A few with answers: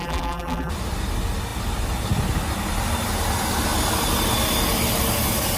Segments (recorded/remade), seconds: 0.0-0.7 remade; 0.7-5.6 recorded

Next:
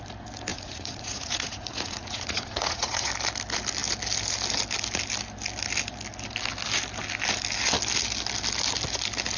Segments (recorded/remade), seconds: 0.0-0.5 recorded; 0.5-3.1 remade; 3.1-9.4 recorded

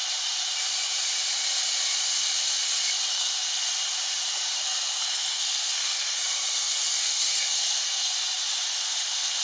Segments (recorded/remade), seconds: 0.0-3.1 recorded; 3.1-3.7 remade; 3.7-4.6 recorded; 4.6-8.1 remade; 8.1-9.4 recorded